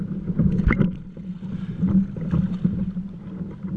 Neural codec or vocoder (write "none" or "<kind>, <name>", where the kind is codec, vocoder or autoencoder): none